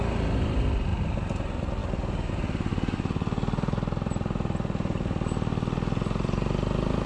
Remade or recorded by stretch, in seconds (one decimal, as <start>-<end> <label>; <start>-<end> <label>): 0.0-7.1 recorded